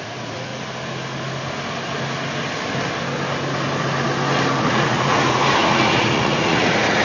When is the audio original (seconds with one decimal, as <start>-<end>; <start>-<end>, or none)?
0.5-4.6